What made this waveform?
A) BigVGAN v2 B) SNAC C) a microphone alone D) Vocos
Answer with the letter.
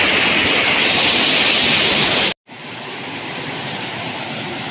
C